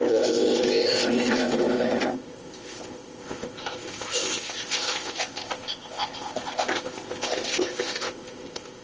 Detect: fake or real fake